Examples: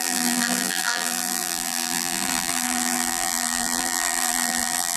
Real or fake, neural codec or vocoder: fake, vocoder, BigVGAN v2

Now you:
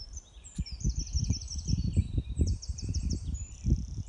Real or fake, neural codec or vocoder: fake, vocoder, BigVGAN v2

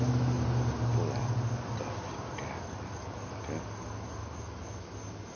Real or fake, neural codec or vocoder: real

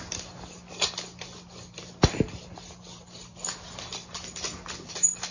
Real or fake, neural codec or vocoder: real